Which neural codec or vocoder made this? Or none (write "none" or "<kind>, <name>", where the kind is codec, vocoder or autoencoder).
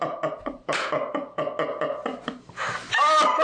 none